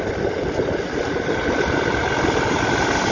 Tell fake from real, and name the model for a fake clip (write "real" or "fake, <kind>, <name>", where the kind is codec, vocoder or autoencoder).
real